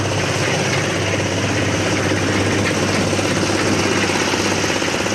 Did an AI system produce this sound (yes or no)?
no